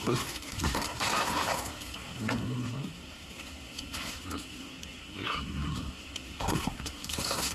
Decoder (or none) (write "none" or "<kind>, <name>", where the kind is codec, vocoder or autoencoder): codec, SNAC